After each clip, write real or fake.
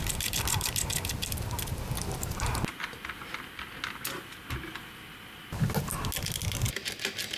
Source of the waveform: real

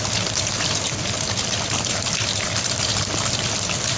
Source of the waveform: real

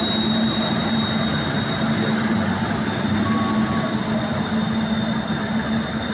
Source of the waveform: real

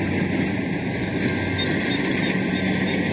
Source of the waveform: real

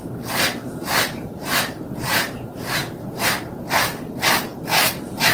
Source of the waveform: fake